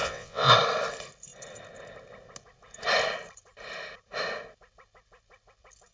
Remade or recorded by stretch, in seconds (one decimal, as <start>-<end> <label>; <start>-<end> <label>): 0.0-0.5 remade; 0.5-5.9 recorded